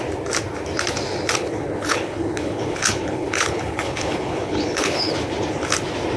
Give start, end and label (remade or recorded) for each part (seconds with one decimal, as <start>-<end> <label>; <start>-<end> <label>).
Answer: 0.0-1.4 recorded; 1.4-5.1 remade; 5.1-6.2 recorded